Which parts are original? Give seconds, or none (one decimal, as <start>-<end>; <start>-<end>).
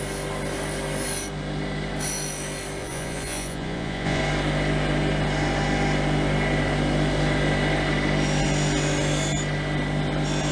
0.0-2.8; 4.2-10.5